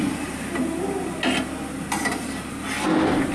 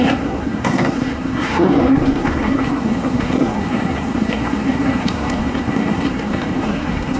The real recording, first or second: first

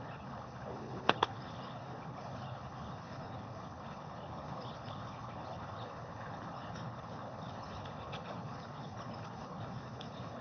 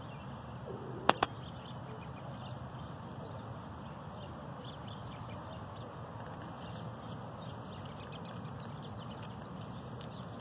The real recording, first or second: second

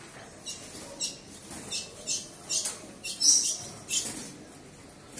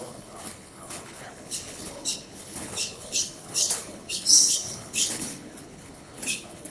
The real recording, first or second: first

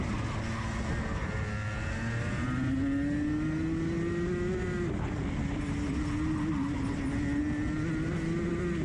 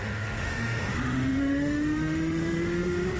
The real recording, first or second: first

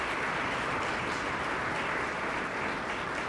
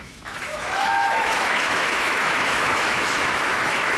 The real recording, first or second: first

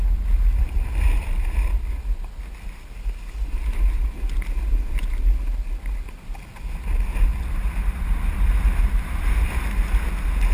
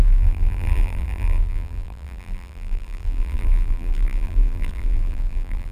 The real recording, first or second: first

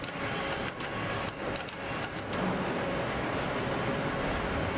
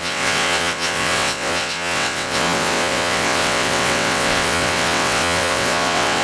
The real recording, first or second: first